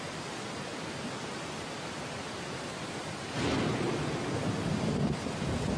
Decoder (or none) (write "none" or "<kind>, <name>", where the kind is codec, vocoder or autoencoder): none